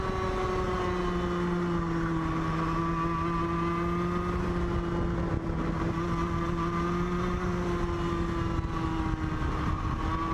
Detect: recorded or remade recorded